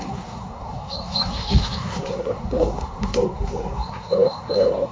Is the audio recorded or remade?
remade